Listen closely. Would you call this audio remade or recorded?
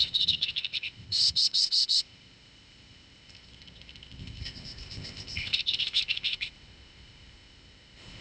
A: remade